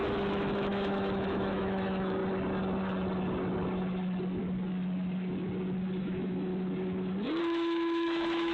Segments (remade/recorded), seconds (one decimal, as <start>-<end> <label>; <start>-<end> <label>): 0.0-2.2 remade; 2.2-6.0 recorded; 6.0-6.5 remade; 6.5-7.4 recorded; 7.4-8.5 remade